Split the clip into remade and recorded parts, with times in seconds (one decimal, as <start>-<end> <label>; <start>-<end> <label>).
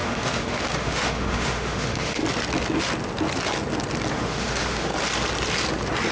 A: 0.0-2.2 remade; 2.2-4.1 recorded; 4.1-4.9 remade; 4.9-6.1 recorded